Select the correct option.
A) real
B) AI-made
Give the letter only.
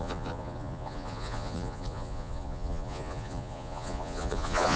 B